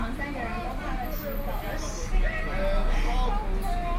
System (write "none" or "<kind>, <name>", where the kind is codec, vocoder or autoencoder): none